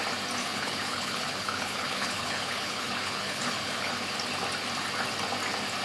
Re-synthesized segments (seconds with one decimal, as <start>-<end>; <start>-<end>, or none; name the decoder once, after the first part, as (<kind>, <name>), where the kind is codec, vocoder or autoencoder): 0.4-3.9 (codec, HILCodec)